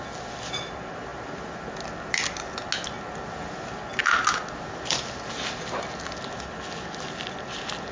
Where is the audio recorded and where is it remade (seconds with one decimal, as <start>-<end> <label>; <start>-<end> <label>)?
0.0-7.9 recorded